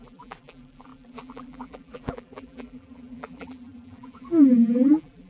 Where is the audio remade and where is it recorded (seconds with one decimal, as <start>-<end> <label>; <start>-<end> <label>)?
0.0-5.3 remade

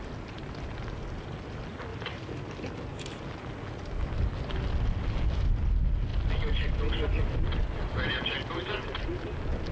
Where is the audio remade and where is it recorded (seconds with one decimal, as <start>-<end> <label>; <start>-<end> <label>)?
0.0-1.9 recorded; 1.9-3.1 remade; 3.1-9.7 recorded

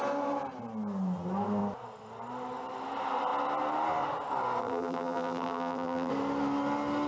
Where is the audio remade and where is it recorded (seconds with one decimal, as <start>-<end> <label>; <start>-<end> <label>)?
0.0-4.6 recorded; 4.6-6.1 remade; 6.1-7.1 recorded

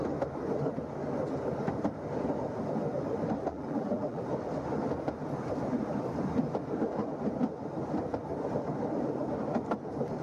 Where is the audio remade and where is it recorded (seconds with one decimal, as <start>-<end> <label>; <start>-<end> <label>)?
0.0-3.5 recorded; 3.5-4.2 remade; 4.2-10.2 recorded